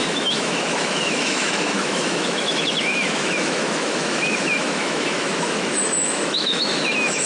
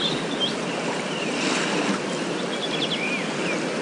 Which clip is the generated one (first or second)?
first